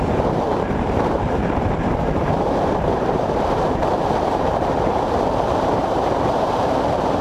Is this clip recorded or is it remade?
remade